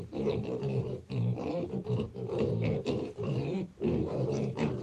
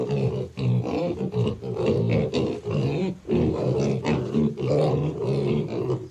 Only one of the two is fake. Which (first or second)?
first